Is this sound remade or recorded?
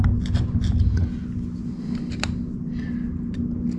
recorded